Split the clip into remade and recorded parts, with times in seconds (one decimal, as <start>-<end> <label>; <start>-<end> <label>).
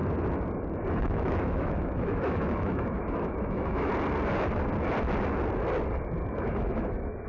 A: 0.0-1.0 recorded; 1.0-3.9 remade; 3.9-6.3 recorded; 6.3-7.3 remade